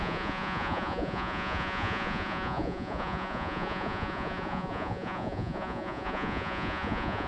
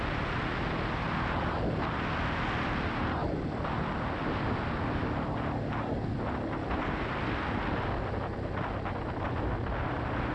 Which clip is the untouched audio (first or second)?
second